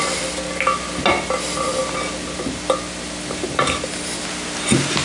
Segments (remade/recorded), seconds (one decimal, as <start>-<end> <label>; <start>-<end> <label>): 0.0-5.0 recorded